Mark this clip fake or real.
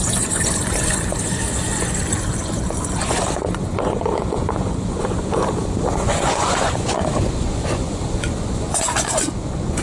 fake